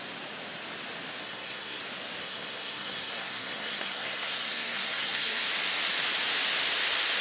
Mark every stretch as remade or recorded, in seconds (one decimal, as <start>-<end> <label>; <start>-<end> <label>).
0.0-1.2 recorded; 1.2-1.8 remade; 1.8-2.2 recorded; 2.2-5.5 remade; 5.5-7.2 recorded